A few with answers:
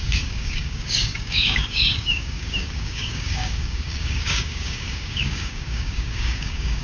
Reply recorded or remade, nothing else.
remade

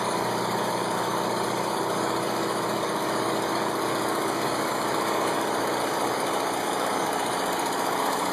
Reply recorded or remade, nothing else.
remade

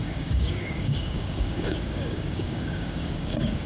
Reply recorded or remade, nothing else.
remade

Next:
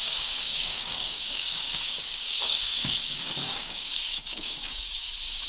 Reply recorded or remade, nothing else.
remade